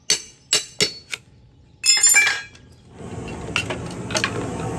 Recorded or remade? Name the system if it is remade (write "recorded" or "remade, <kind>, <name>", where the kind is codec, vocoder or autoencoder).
recorded